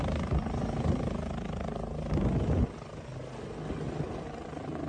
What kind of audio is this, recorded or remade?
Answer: recorded